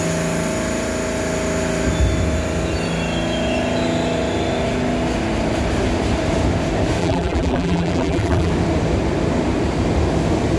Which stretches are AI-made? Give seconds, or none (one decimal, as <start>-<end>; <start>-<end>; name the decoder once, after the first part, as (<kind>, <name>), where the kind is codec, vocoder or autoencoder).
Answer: 7.0-8.5 (vocoder, BigVGAN v2)